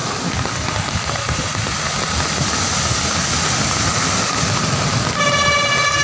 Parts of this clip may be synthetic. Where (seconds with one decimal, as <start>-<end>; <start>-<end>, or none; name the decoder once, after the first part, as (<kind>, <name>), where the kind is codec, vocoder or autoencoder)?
none